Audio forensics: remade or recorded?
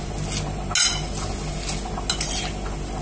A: recorded